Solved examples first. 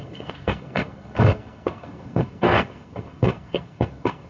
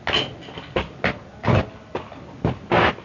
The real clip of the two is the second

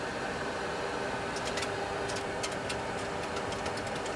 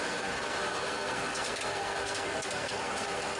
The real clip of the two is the first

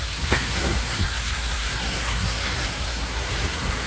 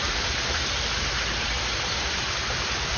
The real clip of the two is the second